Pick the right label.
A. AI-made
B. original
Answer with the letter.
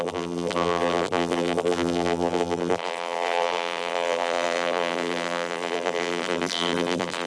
A